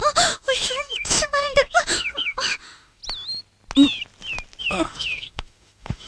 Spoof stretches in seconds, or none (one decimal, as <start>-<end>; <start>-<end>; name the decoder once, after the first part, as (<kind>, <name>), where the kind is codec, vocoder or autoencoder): 0.0-3.0 (autoencoder, DAC-VAE); 4.6-6.1